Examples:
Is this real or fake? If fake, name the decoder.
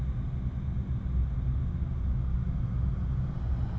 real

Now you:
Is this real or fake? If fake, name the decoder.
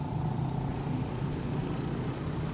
real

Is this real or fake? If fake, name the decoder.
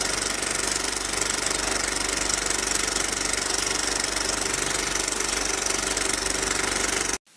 real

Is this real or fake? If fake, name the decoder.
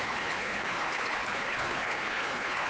fake, codec, HILCodec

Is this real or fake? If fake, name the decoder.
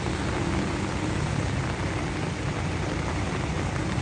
real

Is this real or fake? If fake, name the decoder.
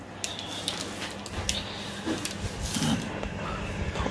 real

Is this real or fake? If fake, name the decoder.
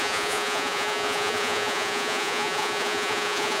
fake, vocoder, Vocos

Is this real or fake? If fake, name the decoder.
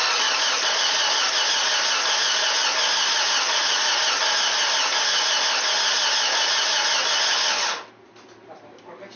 real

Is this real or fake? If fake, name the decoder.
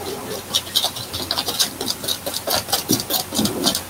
real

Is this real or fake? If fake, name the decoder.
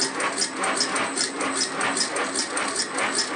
real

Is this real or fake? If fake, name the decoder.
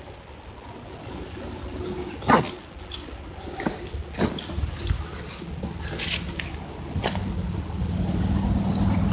real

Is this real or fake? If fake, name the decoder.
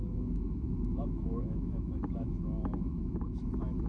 fake, autoencoder, DAC-VAE